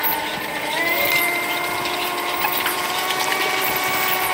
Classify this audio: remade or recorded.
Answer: remade